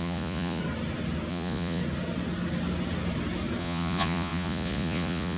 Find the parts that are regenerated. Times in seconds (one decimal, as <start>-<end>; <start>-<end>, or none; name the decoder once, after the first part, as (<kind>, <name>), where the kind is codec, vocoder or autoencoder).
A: 0.0-0.6 (vocoder, Vocos); 1.3-1.8; 3.6-5.4